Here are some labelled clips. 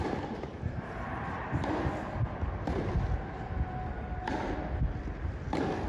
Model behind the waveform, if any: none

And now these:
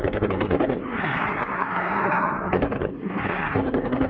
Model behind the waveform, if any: codec, SNAC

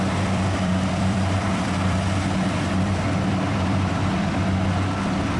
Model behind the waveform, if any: vocoder, BigVGAN v2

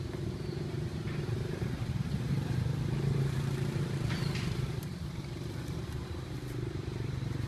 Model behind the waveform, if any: vocoder, BigVGAN v2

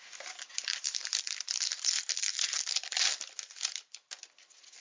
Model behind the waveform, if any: none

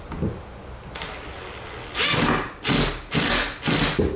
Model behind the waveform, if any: none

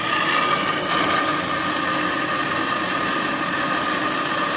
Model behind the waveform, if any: none